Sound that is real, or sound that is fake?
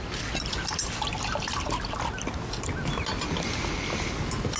real